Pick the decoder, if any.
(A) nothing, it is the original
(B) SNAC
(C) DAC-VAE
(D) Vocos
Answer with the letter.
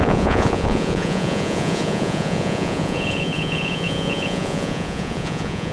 D